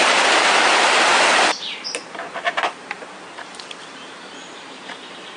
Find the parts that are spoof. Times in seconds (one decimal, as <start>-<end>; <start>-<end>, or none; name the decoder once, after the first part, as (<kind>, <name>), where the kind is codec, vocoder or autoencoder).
0.0-5.4 (vocoder, BigVGAN v2)

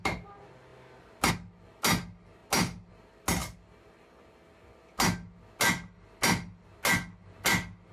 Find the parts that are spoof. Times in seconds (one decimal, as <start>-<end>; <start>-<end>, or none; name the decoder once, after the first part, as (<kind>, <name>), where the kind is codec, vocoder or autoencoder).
none

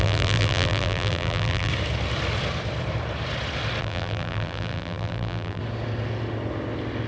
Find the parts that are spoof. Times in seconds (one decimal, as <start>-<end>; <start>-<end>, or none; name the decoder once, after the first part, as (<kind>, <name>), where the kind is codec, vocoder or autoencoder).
0.0-1.7 (vocoder, BigVGAN v2); 3.8-5.6

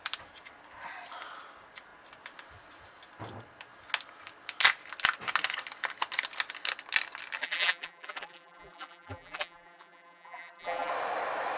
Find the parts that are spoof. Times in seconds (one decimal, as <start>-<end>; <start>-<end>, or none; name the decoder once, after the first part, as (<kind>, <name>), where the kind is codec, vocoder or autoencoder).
7.4-10.9 (vocoder, BigVGAN v2)

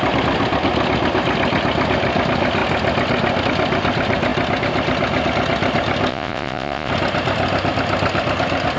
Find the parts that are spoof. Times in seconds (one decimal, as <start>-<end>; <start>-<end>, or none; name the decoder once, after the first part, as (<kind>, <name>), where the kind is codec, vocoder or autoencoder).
6.1-6.9 (vocoder, Vocos)

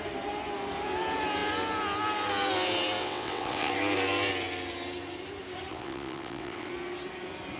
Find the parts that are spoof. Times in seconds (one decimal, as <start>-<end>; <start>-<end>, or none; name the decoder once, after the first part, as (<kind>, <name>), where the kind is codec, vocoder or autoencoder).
3.0-3.7 (vocoder, WaveNeXt); 5.7-6.7

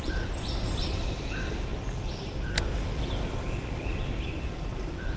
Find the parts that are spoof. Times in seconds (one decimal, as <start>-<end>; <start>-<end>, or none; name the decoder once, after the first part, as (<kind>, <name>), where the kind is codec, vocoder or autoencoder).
0.0-1.7 (vocoder, BigVGAN v2); 3.7-5.2

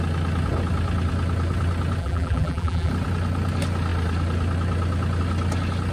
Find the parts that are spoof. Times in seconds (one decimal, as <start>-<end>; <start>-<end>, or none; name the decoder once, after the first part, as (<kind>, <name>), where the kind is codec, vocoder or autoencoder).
2.0-2.9 (vocoder, BigVGAN v2)